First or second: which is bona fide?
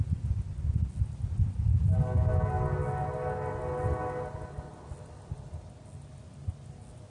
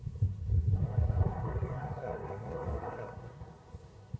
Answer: first